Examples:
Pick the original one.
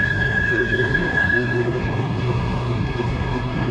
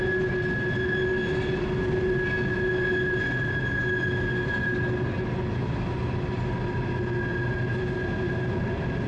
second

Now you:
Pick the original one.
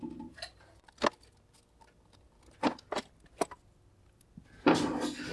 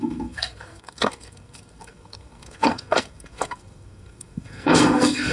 first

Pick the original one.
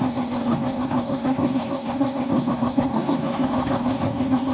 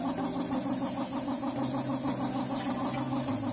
second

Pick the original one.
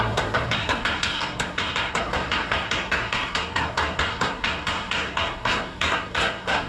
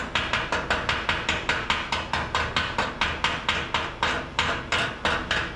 second